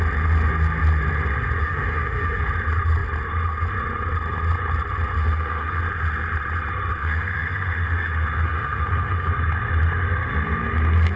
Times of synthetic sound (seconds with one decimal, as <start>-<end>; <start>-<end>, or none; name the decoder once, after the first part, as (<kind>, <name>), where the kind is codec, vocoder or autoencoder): 1.6-2.4 (autoencoder, DAC-VAE); 5.2-5.8; 7.0-9.3